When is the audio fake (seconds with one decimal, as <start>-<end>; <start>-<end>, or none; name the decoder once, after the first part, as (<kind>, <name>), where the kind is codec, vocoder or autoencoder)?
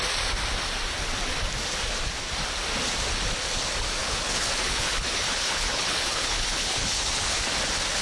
4.0-7.4 (codec, HILCodec)